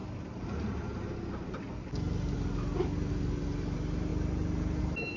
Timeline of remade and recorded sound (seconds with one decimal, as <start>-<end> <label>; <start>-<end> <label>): 0.0-5.2 recorded